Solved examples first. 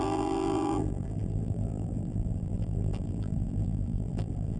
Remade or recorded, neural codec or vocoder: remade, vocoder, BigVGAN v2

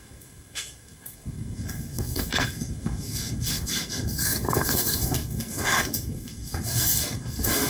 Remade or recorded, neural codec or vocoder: remade, codec, SNAC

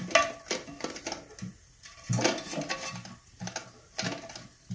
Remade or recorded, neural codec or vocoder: recorded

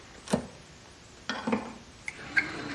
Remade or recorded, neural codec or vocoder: recorded